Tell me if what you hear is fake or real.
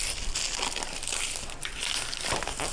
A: real